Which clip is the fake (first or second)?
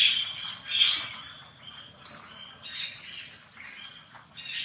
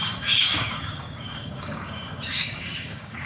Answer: second